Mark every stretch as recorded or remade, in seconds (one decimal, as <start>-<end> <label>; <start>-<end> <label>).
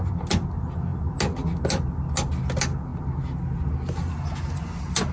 0.0-5.1 recorded